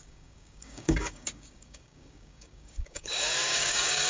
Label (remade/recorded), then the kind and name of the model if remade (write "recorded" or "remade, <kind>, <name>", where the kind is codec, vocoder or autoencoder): remade, codec, DAC